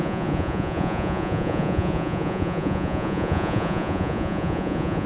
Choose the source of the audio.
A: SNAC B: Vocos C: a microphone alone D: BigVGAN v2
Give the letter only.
B